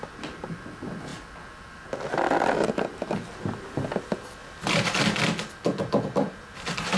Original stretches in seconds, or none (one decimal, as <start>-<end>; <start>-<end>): 0.0-4.4